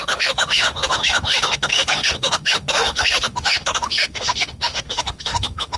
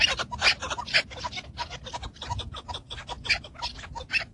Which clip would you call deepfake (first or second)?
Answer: first